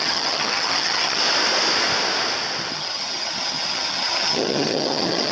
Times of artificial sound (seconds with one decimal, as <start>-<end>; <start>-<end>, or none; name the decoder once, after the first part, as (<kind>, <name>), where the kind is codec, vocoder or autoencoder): 0.0-1.2 (vocoder, HiFi-GAN); 2.7-5.3